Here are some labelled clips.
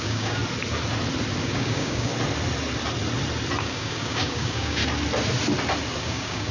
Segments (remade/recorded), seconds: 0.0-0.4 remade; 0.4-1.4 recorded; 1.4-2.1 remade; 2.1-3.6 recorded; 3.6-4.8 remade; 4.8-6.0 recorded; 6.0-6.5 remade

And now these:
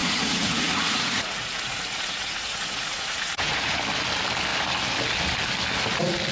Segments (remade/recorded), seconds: 0.0-3.8 remade; 3.8-6.3 recorded

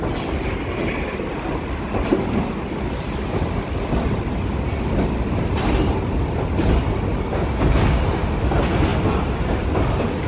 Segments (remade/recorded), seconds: 0.0-10.3 recorded

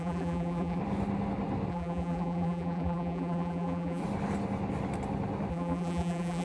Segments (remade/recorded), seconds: 0.0-0.8 remade; 0.8-1.7 recorded; 1.7-4.0 remade; 4.0-5.5 recorded; 5.5-6.4 remade

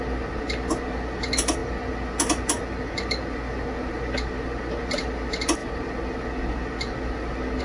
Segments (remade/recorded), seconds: 0.0-7.6 recorded